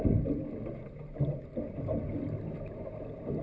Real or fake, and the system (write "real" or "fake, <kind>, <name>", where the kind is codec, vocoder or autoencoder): real